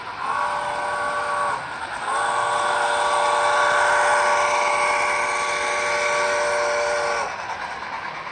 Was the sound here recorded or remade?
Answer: recorded